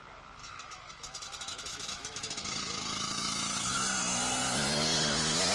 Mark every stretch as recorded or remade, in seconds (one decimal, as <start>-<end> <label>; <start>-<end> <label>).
0.0-0.4 recorded; 0.4-3.7 remade; 3.7-5.5 recorded